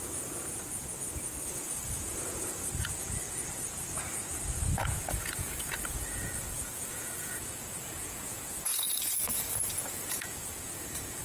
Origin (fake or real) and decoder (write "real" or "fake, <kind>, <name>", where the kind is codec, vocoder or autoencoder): fake, vocoder, Vocos